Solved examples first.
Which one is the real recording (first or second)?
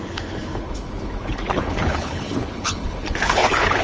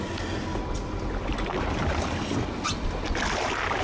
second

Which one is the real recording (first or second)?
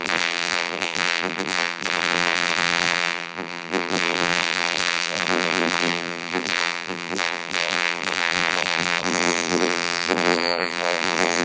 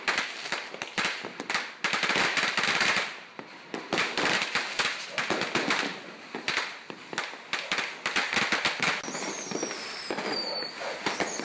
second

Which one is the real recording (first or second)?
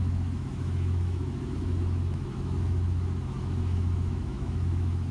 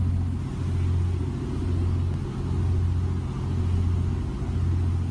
second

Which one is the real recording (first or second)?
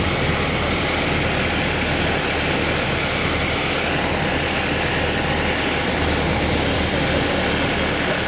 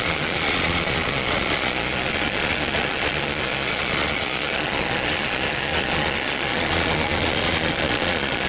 first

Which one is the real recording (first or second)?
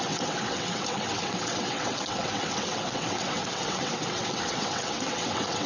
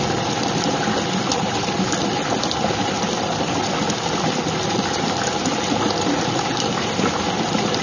second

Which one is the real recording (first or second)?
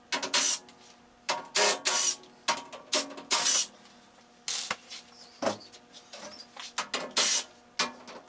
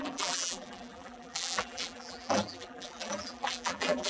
first